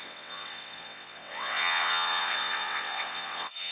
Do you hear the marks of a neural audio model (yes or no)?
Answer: yes